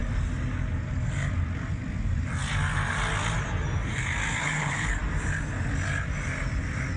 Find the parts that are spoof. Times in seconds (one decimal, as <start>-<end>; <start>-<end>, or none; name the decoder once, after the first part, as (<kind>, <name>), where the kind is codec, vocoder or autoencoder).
4.4-4.9 (codec, HILCodec)